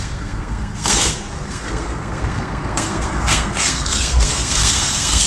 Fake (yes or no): yes